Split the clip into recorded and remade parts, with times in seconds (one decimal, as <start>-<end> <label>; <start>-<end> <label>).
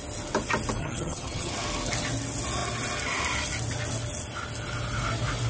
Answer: 0.0-0.8 recorded; 0.8-1.5 remade; 1.5-5.5 recorded